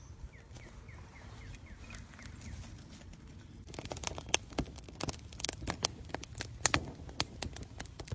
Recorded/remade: recorded